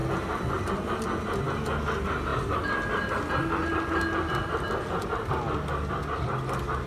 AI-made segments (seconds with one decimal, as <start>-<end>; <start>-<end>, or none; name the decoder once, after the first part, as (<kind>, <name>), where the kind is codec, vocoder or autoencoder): none